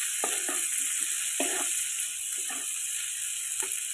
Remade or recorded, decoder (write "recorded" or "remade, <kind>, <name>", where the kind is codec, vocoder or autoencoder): recorded